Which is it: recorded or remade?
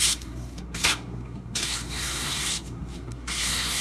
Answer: remade